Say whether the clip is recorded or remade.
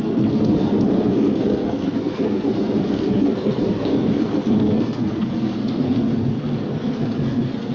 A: remade